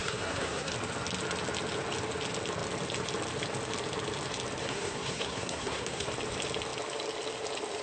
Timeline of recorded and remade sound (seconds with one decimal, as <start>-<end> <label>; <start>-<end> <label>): 0.0-0.7 remade; 0.7-4.6 recorded; 4.6-6.1 remade; 6.1-7.8 recorded